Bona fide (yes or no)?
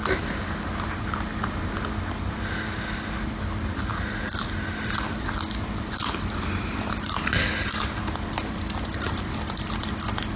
yes